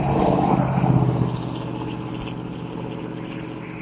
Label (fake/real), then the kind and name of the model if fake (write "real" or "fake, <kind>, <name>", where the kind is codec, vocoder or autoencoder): real